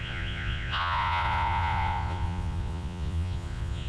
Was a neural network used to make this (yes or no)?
yes